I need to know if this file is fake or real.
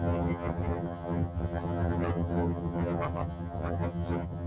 fake